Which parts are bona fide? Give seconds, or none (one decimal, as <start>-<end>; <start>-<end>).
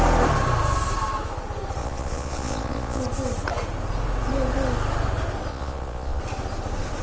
0.0-1.8; 3.0-5.5; 6.2-7.0